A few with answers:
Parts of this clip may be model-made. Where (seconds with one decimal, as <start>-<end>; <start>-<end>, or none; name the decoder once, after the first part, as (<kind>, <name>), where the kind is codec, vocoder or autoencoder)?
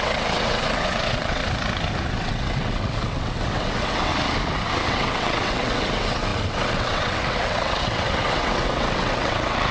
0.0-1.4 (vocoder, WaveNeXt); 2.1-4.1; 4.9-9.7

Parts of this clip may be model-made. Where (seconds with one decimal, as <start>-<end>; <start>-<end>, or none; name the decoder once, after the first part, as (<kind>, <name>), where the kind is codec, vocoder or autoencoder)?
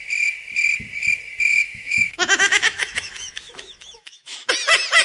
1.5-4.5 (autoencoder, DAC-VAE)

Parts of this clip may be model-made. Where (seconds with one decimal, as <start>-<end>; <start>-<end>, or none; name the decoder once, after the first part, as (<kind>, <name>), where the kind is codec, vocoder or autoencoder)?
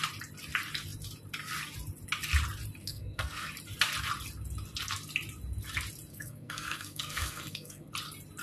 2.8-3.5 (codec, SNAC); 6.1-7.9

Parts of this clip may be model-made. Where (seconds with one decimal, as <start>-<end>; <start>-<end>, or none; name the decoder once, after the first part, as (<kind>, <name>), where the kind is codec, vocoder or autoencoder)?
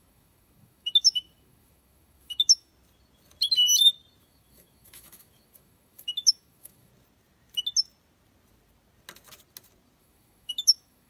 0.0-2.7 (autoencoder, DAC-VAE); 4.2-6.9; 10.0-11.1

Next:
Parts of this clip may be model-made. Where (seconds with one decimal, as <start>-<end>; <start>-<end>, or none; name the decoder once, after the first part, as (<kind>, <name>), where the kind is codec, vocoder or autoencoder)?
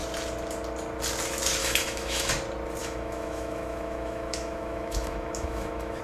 1.6-2.3 (autoencoder, DAC-VAE); 2.8-6.0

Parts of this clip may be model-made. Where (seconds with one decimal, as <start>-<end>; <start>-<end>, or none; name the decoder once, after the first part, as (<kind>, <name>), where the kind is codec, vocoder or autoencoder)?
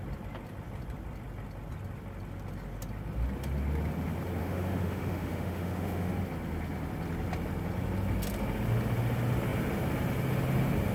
4.4-6.1 (autoencoder, DAC-VAE)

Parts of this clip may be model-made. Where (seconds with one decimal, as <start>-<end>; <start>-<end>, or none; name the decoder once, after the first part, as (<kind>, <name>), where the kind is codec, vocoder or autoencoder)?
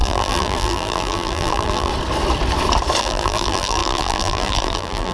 0.0-1.9 (vocoder, BigVGAN v2); 3.0-5.1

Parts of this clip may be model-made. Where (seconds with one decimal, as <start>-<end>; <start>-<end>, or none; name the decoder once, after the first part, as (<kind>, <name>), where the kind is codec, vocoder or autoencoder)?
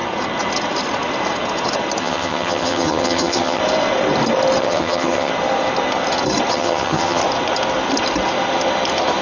2.0-3.6 (vocoder, HiFi-GAN); 4.6-5.3; 6.5-7.2